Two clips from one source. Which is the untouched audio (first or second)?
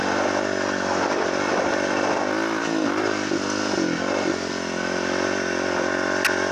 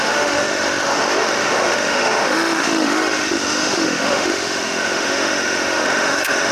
first